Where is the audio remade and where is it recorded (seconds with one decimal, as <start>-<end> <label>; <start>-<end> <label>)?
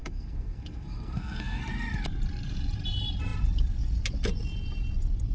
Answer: 0.0-1.6 remade; 1.6-5.3 recorded